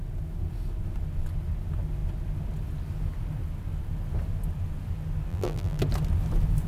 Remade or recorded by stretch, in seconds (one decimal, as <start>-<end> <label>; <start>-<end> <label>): 0.0-5.3 recorded; 5.3-5.8 remade; 5.8-6.7 recorded